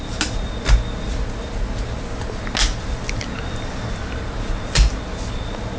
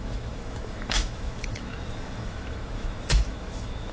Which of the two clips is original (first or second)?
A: first